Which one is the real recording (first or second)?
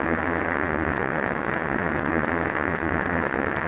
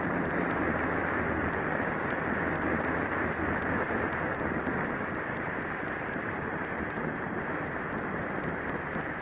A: second